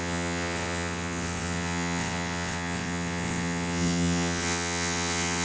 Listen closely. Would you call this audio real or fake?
fake